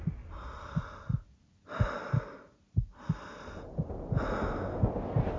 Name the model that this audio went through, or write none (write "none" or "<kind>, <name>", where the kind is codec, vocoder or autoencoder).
none